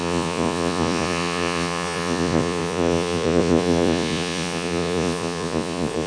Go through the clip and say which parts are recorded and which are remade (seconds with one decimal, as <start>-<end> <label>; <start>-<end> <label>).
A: 0.0-6.1 remade